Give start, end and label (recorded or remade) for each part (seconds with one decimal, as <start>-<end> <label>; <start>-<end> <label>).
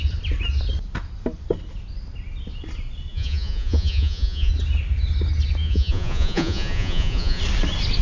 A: 0.0-3.1 recorded; 3.1-4.5 remade; 4.5-5.6 recorded; 5.6-7.4 remade; 7.4-8.0 recorded